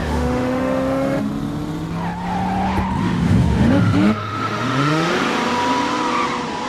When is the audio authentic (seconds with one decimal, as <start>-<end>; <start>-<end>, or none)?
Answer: 1.3-3.0; 5.1-6.7